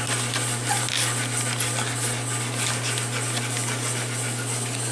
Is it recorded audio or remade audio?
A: recorded